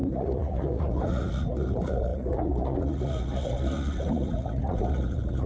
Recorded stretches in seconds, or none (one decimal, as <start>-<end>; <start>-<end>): none